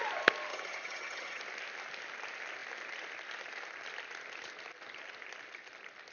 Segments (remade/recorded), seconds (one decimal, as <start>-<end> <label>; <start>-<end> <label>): 0.0-0.5 recorded; 0.5-1.4 remade; 1.4-6.1 recorded